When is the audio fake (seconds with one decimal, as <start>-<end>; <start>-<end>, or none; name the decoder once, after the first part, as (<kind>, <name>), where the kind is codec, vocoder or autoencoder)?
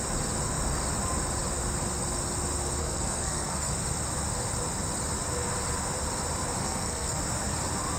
2.8-3.7 (codec, SNAC); 6.6-7.2